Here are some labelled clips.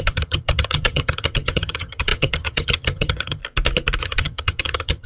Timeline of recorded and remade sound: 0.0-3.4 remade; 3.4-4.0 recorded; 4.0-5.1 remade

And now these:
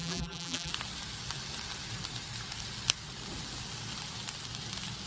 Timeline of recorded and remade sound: 0.0-0.7 remade; 0.7-5.1 recorded

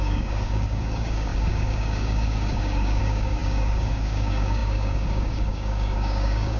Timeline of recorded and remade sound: 0.0-6.6 remade

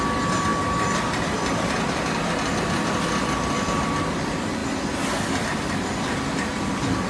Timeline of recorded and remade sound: 0.0-7.1 recorded